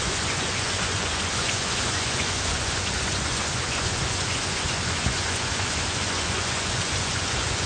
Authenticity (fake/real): fake